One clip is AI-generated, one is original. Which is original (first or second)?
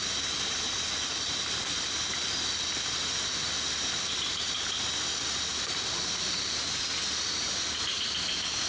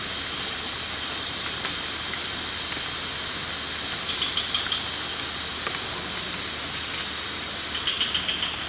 second